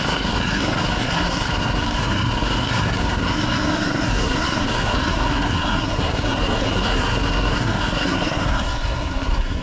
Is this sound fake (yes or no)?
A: yes